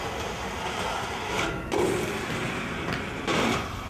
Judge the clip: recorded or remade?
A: recorded